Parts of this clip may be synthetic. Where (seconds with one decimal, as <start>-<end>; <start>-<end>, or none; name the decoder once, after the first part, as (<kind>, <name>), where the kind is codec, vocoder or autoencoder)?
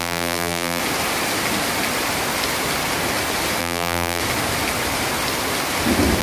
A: 0.0-0.8 (vocoder, BigVGAN v2); 3.6-4.2